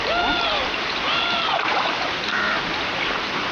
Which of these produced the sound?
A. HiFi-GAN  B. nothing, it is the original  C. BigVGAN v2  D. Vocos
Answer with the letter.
C